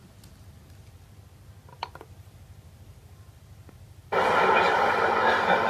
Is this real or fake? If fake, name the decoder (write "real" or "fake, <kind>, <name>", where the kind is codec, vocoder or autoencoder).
real